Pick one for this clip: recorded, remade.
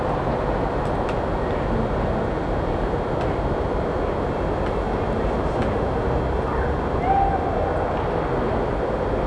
recorded